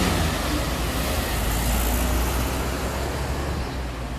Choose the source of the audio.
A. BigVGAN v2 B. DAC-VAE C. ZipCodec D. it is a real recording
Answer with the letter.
D